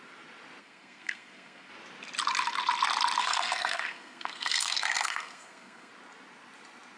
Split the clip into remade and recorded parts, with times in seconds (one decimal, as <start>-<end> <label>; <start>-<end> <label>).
0.0-0.6 recorded; 0.6-1.7 remade; 1.7-3.2 recorded; 3.2-5.9 remade; 5.9-7.0 recorded